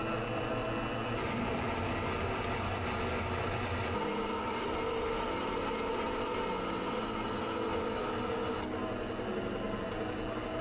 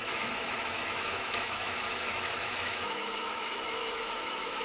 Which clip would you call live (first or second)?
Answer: first